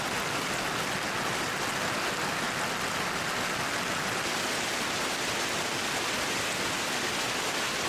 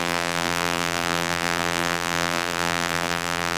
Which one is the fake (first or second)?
second